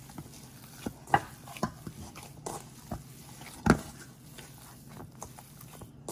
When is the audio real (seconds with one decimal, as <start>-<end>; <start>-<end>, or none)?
0.0-6.1